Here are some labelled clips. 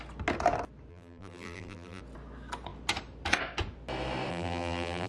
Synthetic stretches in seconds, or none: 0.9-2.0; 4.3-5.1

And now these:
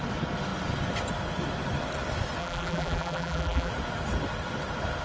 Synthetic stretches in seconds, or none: 2.4-3.7

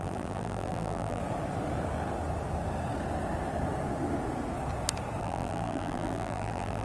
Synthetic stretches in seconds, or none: 0.0-1.2; 5.2-6.8

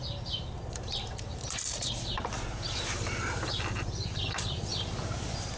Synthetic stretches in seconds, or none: 0.0-4.7

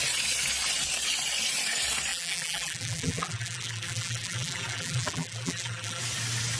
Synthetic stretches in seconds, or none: 2.1-6.0

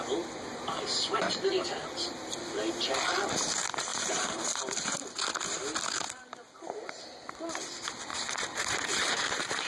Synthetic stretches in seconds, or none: 0.5-2.4; 3.9-4.6; 8.1-9.7

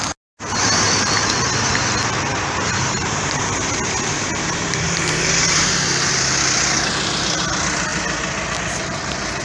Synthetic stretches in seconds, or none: 2.3-6.1